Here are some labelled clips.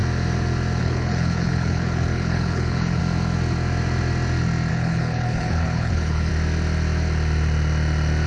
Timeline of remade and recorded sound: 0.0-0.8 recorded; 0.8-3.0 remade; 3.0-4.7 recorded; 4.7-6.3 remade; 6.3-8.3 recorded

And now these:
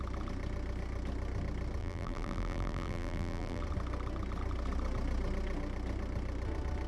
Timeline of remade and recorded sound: 0.0-1.8 recorded; 1.8-3.6 remade; 3.6-6.9 recorded